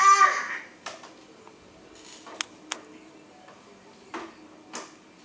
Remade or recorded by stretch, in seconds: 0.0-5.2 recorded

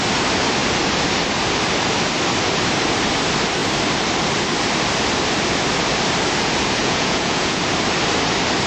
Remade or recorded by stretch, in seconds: 0.0-6.8 recorded; 6.8-7.6 remade; 7.6-8.7 recorded

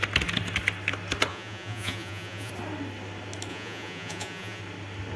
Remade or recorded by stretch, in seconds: 0.0-1.3 recorded; 1.3-2.5 remade; 2.5-3.5 recorded; 3.5-4.6 remade; 4.6-5.2 recorded